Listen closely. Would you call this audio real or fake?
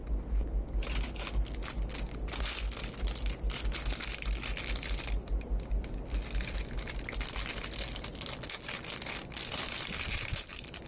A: real